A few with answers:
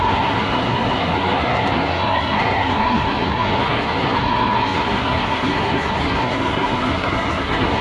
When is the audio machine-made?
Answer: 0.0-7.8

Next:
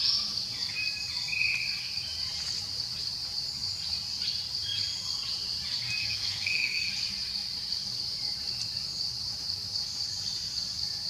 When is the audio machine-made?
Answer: 6.0-6.9

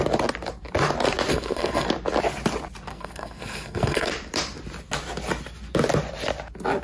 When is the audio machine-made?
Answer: 1.3-1.9; 2.9-4.1

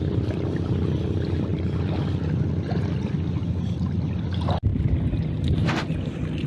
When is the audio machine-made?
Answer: none